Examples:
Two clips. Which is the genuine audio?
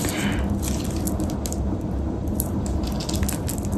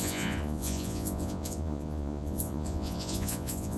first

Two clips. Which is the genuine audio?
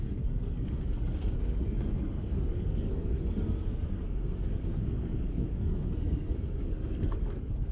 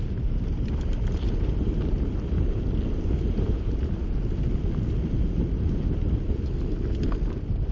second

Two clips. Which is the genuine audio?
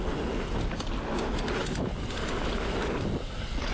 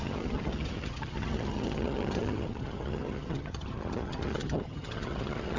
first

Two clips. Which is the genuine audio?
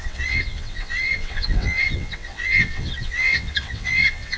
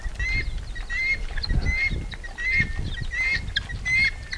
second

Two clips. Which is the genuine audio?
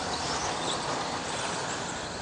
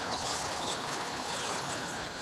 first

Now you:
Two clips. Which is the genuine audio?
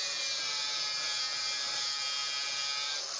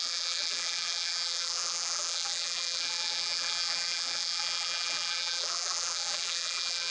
first